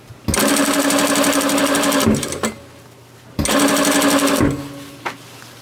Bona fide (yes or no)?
yes